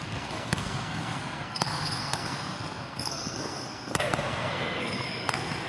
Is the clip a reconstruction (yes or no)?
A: yes